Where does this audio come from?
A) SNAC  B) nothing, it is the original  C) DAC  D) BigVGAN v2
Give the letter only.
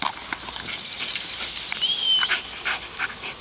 B